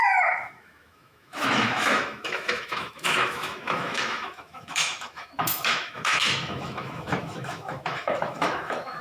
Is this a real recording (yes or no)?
no